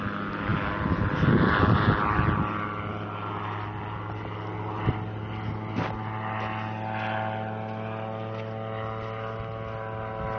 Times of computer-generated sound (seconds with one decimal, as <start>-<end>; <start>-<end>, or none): none